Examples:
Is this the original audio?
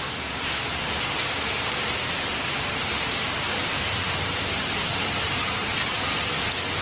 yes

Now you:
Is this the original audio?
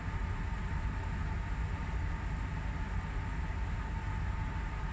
yes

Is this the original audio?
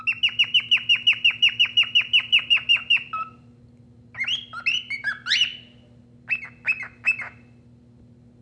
yes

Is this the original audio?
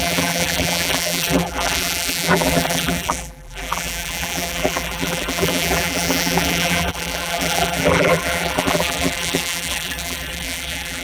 no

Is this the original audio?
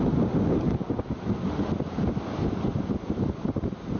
yes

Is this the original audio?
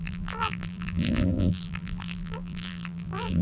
no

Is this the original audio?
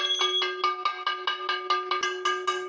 yes